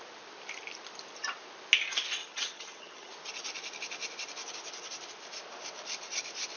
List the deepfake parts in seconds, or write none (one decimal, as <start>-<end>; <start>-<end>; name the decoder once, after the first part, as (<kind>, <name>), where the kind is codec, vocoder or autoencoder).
2.2-3.1 (vocoder, HiFi-GAN)